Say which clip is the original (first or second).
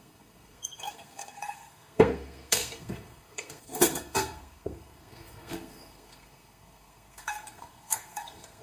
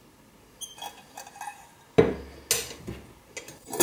second